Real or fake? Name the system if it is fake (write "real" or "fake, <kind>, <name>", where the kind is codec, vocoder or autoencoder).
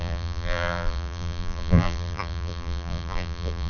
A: fake, vocoder, BigVGAN v2